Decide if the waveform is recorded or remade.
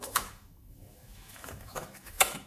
remade